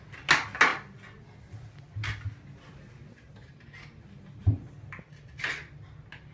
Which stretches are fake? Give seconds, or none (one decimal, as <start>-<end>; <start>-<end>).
none